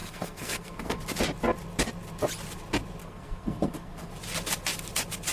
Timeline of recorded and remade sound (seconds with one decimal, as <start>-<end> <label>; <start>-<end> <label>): 0.0-1.0 remade; 1.0-3.0 recorded; 3.0-4.1 remade; 4.1-5.3 recorded